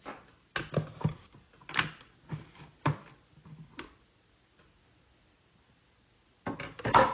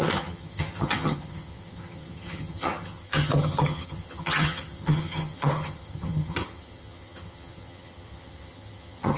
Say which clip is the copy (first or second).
second